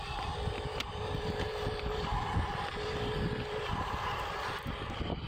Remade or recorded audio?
recorded